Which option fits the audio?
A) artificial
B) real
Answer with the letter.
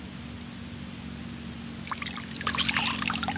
B